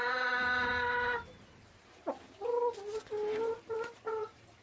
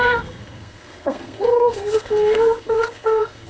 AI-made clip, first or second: second